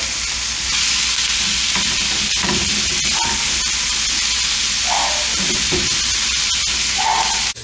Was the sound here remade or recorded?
recorded